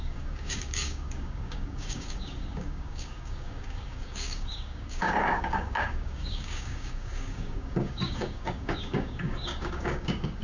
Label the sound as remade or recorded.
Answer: remade